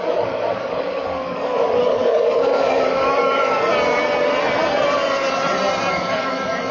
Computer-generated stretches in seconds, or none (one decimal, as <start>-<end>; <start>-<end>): 0.0-3.7; 5.9-6.7